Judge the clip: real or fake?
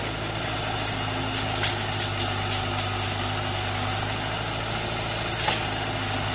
real